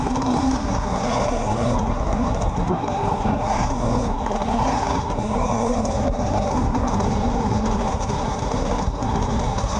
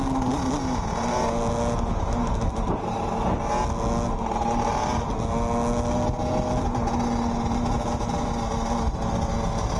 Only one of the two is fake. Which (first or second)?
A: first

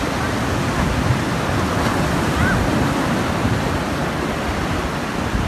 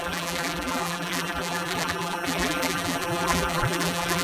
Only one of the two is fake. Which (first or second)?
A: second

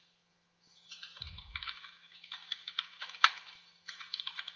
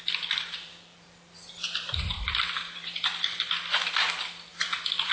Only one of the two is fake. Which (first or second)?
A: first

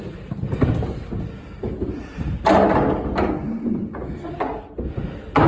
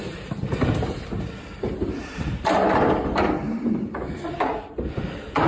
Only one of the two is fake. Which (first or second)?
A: second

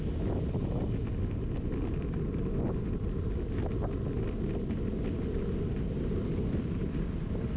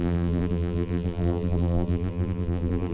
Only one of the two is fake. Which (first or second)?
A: second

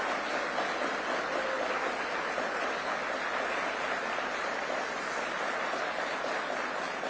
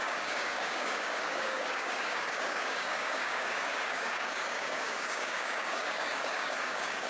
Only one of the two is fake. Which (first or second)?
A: second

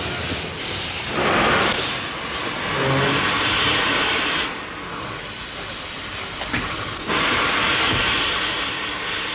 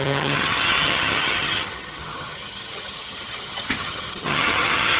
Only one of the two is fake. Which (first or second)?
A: second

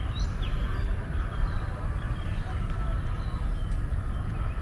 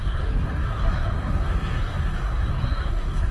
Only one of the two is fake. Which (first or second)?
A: second